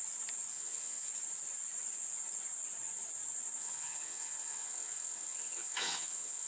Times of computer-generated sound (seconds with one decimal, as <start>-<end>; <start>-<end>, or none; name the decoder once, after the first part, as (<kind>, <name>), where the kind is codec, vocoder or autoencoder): 0.5-1.1 (vocoder, WaveNeXt); 3.6-6.5